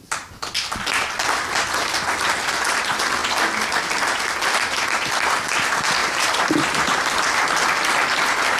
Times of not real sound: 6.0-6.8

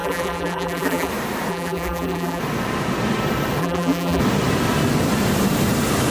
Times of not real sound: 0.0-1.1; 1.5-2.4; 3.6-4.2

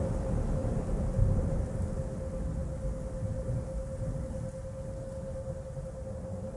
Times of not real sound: 0.6-1.9

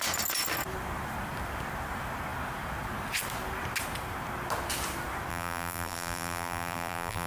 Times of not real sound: 5.3-7.3

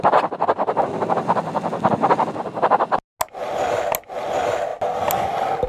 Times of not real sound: none